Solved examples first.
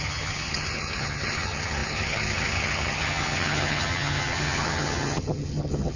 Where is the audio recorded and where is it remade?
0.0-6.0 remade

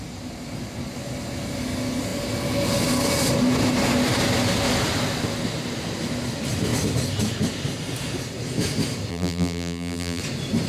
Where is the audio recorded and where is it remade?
0.0-9.1 recorded; 9.1-10.2 remade; 10.2-10.7 recorded

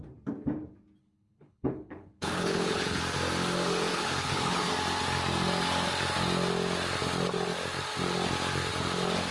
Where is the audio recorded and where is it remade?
0.0-1.0 recorded; 1.0-3.0 remade; 3.0-3.9 recorded; 3.9-4.7 remade; 4.7-9.3 recorded

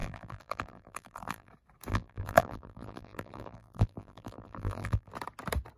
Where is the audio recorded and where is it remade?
0.0-1.5 remade; 1.5-1.9 recorded; 1.9-5.1 remade; 5.1-5.8 recorded

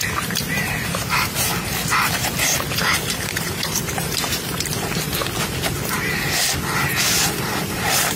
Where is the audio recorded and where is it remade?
0.0-1.5 remade; 1.5-2.4 recorded; 2.4-5.2 remade; 5.2-6.9 recorded; 6.9-8.2 remade